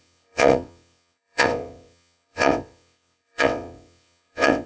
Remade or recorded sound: remade